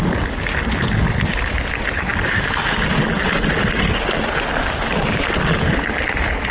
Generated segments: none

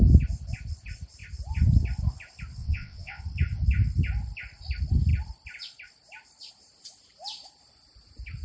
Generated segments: 2.6-3.2 (vocoder, WaveNeXt)

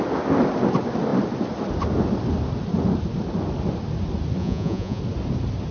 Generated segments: 4.4-5.0 (vocoder, Vocos)